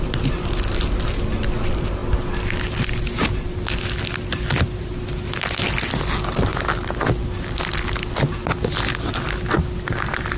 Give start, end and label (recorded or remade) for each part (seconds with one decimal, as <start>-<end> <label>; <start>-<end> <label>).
0.0-10.4 recorded